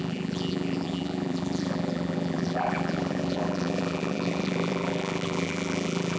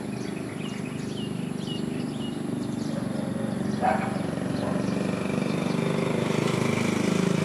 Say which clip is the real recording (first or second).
second